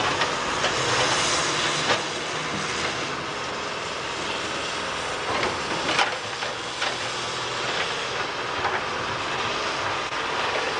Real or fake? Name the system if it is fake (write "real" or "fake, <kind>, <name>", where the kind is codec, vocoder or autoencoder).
real